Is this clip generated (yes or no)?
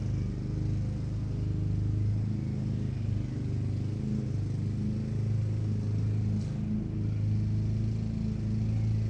no